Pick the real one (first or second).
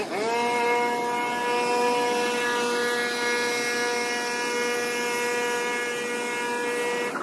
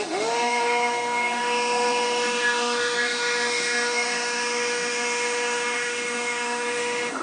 first